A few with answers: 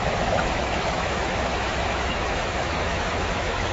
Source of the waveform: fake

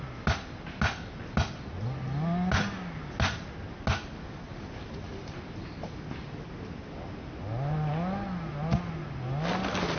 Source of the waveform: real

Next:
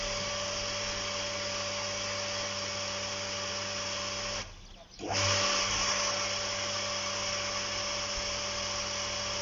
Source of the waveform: real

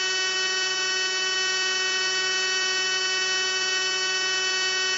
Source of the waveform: real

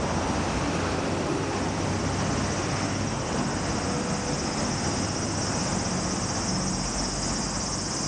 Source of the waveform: real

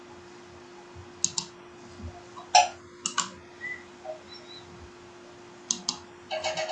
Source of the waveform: real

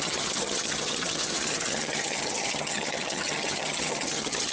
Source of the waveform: fake